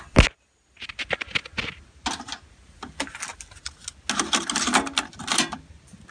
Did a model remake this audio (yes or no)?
no